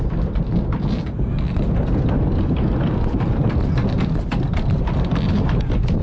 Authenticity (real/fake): real